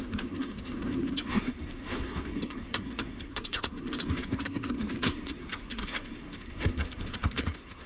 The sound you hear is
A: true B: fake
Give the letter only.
B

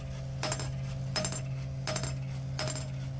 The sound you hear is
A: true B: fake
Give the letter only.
A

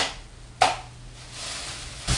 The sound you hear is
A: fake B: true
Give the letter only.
B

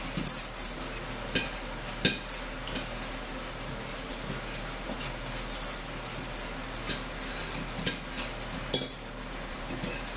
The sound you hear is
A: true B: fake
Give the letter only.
A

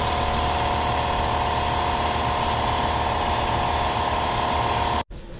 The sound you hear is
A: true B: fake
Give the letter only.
A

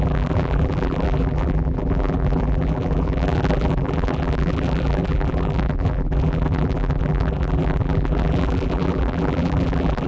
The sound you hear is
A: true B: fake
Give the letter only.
B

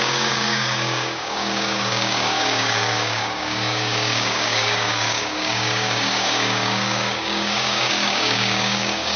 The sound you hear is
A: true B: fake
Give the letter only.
B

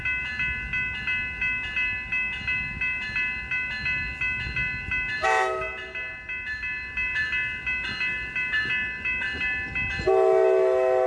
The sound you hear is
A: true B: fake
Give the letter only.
A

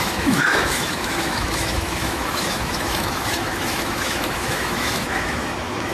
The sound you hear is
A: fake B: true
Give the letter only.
A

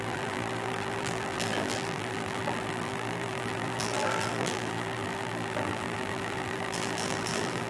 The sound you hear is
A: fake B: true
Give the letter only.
A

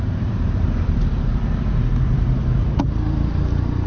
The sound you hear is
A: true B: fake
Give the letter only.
B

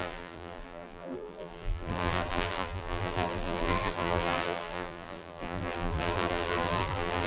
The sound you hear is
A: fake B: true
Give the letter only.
A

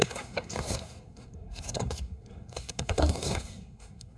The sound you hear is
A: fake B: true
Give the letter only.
A